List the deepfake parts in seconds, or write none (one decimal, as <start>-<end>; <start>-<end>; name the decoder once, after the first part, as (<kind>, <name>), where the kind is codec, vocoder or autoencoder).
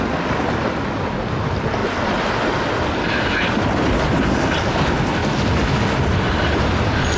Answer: none